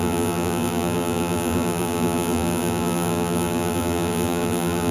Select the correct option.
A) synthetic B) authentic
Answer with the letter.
A